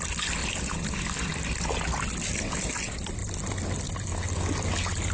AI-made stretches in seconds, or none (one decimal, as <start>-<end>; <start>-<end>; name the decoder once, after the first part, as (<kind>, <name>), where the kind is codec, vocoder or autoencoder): none